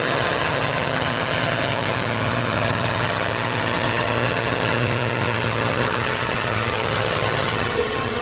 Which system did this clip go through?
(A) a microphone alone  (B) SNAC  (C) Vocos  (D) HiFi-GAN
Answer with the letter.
D